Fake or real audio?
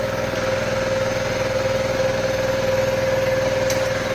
real